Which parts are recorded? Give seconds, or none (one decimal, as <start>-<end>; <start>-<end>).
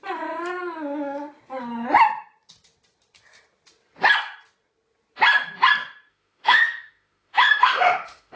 0.0-6.1